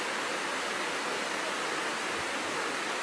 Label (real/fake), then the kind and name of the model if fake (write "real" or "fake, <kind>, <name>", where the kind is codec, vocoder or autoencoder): real